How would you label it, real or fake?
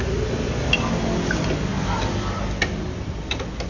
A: real